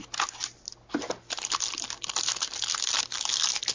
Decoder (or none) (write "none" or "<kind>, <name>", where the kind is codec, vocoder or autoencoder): none